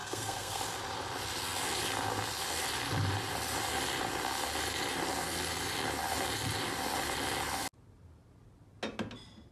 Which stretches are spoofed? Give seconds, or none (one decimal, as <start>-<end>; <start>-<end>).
0.0-0.6